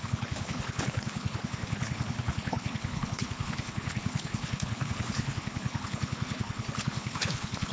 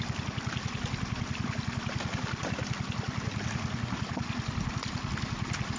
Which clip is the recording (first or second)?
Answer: second